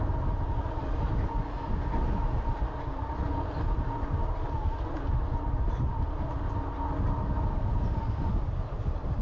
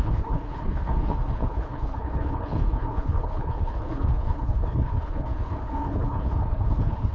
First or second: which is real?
first